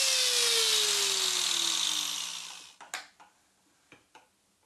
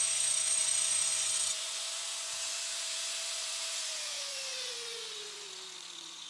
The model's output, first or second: second